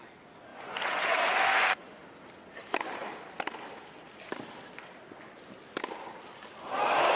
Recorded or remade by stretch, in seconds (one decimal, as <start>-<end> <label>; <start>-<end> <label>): 0.0-0.5 recorded; 0.5-2.0 remade; 2.0-7.2 recorded